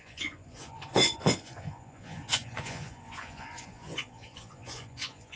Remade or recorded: remade